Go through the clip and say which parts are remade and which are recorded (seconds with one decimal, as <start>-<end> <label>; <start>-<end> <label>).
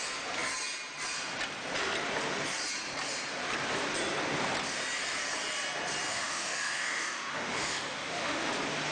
0.0-6.1 recorded; 6.1-8.5 remade; 8.5-8.9 recorded